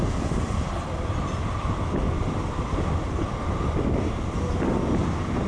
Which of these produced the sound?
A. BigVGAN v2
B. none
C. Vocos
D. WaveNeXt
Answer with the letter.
B